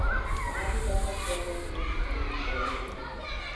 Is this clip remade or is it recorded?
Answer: recorded